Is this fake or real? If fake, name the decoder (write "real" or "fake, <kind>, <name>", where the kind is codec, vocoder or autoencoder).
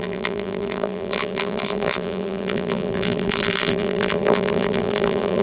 fake, vocoder, BigVGAN v2